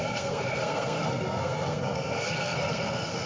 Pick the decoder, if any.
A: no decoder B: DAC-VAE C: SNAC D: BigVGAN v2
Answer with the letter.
C